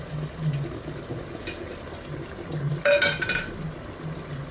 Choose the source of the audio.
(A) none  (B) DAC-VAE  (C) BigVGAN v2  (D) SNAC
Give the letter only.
A